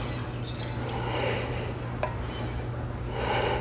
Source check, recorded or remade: recorded